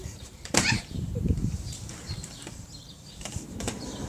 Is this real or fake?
fake